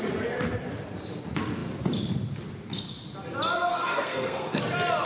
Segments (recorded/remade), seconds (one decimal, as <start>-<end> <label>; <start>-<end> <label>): 0.0-3.7 recorded; 3.7-4.6 remade; 4.6-5.1 recorded